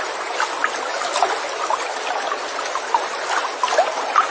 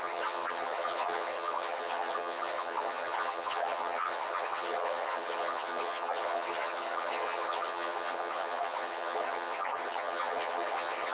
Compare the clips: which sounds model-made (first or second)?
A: second